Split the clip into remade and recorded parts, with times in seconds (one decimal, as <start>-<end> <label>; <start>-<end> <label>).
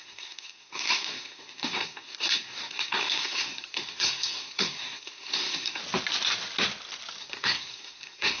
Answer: 0.0-5.8 remade; 5.8-7.2 recorded; 7.2-8.4 remade